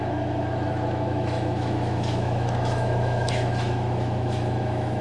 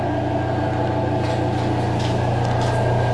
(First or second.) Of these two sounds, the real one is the second